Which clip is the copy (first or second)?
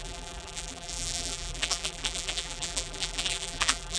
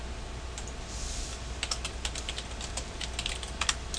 first